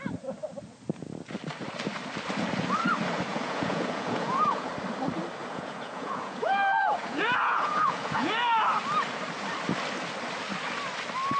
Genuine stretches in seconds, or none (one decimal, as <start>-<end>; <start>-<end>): 0.0-3.3; 4.7-5.4; 6.5-7.0; 8.3-11.4